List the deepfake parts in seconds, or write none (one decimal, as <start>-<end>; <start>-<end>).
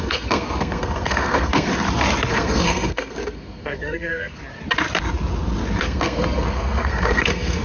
0.0-1.7; 2.3-4.4; 5.8-7.6